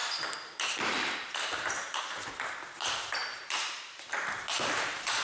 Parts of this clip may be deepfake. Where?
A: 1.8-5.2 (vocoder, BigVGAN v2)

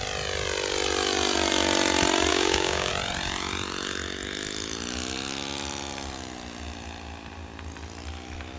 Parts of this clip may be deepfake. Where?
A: 2.3-2.9 (codec, DAC)

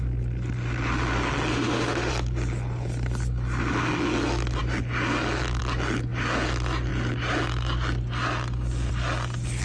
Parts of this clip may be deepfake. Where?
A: 1.5-2.1 (autoencoder, DAC-VAE)

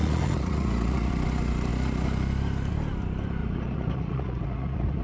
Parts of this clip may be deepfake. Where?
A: 0.0-1.1 (vocoder, Vocos); 3.4-5.0